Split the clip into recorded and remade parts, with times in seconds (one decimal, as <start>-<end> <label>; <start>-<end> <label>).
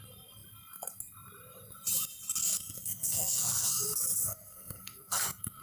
0.0-2.4 recorded; 2.4-5.6 remade